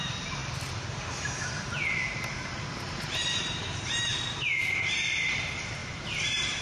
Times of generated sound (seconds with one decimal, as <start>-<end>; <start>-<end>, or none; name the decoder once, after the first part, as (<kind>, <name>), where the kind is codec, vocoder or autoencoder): 0.0-6.6 (vocoder, BigVGAN v2)